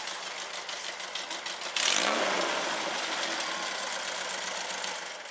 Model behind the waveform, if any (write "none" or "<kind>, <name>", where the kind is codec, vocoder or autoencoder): none